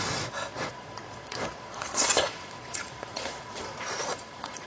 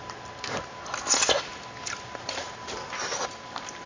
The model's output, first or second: first